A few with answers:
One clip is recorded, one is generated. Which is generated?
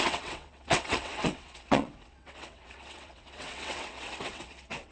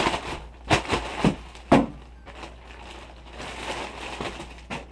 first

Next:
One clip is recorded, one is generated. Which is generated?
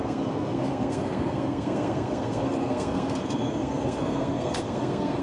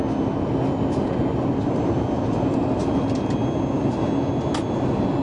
first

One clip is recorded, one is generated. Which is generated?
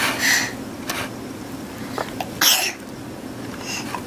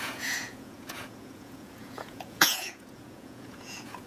second